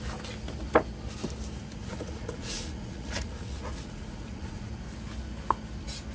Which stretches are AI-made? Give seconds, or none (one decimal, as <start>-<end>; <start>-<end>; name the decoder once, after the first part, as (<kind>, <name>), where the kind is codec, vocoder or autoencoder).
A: 1.8-4.7 (vocoder, Vocos)